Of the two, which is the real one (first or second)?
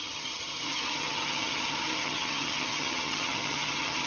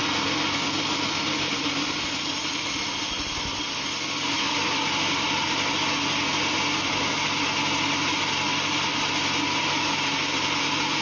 second